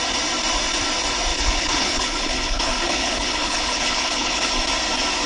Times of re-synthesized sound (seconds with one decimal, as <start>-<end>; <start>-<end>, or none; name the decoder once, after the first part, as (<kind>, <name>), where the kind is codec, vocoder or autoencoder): 1.3-4.5 (codec, HILCodec)